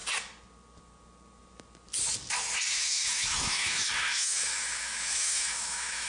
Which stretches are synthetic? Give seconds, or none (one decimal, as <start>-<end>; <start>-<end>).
2.7-6.1